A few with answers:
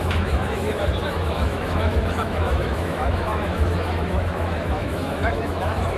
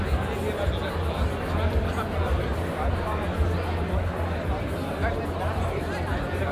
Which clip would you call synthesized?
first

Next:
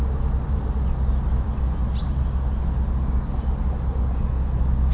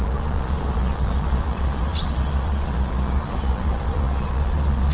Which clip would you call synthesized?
second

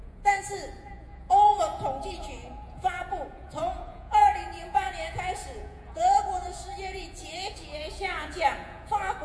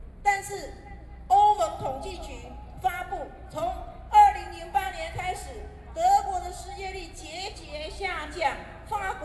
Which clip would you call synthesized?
first